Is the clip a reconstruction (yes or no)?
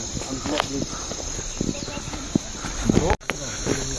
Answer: no